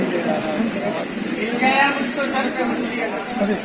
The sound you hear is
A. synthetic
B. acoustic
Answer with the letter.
B